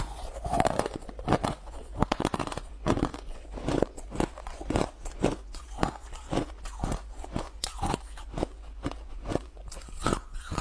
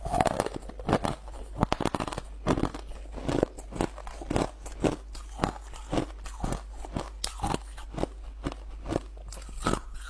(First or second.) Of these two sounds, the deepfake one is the first